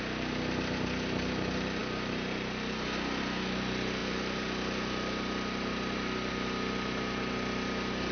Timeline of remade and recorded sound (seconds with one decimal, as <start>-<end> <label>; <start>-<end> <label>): 0.0-8.1 recorded